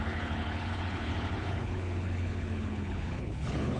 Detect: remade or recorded remade